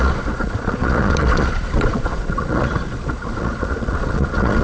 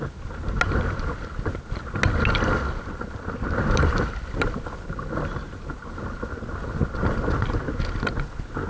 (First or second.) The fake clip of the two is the first